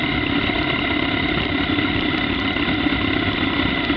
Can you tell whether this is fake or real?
real